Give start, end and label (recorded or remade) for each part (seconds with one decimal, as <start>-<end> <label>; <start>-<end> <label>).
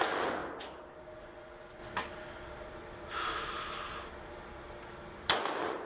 0.0-0.4 remade; 0.4-1.2 recorded; 1.2-1.8 remade; 1.8-5.3 recorded; 5.3-5.9 remade